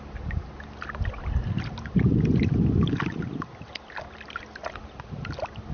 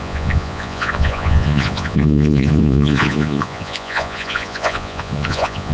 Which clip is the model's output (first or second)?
second